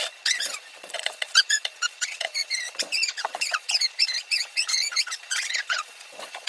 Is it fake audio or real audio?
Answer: fake